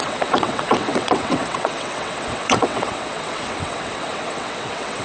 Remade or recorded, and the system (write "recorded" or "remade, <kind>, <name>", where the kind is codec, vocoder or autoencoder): remade, vocoder, WaveNeXt